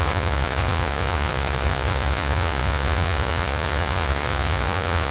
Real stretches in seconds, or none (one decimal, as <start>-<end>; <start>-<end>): none